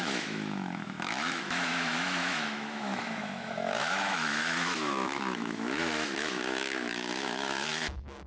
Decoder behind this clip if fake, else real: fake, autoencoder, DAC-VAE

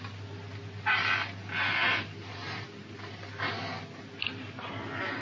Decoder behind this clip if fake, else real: real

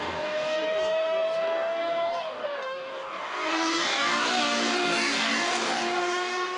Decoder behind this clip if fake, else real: fake, codec, DAC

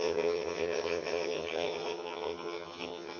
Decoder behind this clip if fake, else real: fake, vocoder, HiFi-GAN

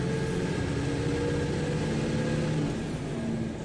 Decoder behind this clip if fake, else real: real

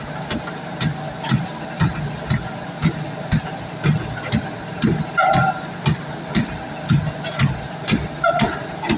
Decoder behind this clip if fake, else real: real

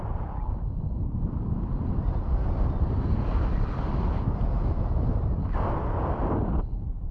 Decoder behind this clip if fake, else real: real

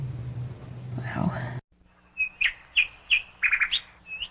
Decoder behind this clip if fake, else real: real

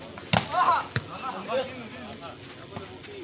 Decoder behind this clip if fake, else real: real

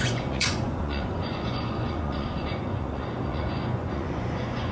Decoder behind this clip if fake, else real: fake, vocoder, Vocos